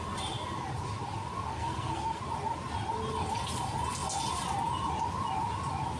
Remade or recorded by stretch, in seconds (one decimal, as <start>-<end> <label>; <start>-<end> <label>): 0.0-1.5 recorded; 1.5-2.2 remade; 2.2-6.0 recorded